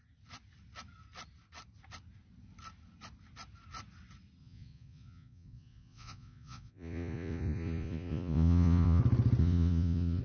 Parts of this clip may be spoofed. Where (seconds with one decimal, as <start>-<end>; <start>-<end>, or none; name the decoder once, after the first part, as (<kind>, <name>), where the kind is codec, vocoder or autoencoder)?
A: 4.4-9.0 (vocoder, Vocos); 9.4-10.2